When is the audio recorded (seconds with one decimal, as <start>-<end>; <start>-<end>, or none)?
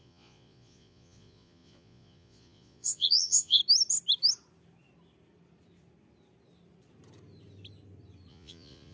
3.6-8.3